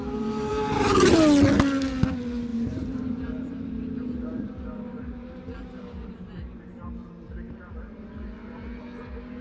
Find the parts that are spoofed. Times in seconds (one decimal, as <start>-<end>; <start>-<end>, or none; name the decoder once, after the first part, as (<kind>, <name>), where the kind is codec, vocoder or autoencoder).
0.5-1.1 (vocoder, BigVGAN v2); 2.5-7.7